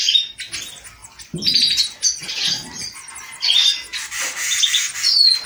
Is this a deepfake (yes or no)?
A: no